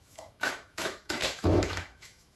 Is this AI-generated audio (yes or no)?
yes